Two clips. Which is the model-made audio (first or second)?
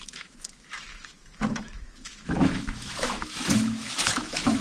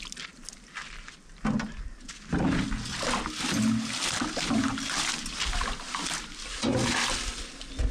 first